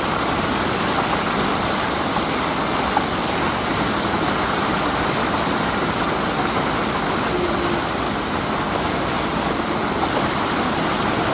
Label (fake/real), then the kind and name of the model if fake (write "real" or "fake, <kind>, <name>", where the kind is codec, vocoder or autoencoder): real